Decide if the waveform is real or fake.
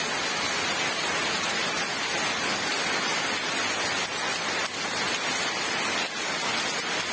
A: real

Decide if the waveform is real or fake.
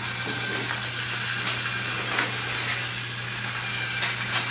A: real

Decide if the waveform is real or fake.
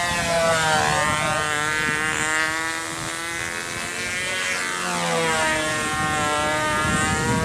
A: real